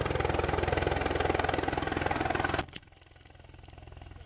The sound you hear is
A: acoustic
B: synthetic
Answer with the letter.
A